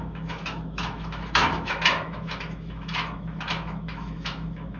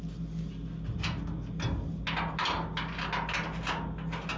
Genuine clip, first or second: second